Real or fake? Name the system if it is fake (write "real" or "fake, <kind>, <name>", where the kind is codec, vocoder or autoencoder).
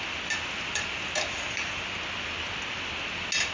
real